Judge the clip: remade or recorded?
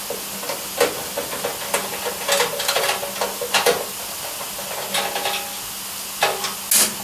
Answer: recorded